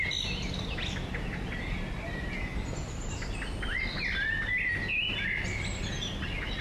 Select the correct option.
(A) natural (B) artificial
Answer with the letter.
A